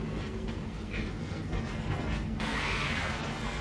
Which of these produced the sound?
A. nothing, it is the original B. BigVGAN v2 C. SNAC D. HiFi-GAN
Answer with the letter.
C